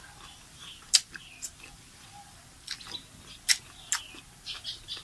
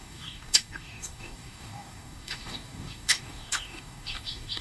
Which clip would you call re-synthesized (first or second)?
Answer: second